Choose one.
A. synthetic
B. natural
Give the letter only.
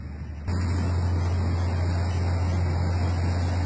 B